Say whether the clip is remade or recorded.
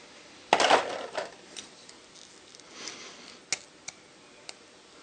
recorded